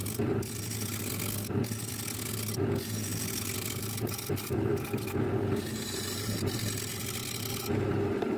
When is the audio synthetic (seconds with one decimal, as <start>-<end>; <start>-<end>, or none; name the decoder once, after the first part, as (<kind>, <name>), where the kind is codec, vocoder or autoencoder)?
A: 0.0-1.3 (vocoder, BigVGAN v2); 3.1-4.7; 6.9-7.6